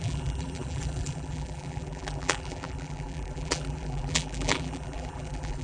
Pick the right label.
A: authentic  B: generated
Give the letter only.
B